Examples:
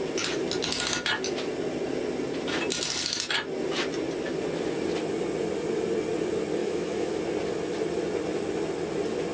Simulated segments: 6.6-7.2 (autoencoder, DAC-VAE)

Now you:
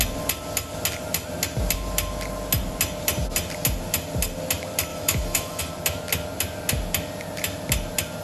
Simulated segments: 4.9-5.6 (autoencoder, DAC-VAE)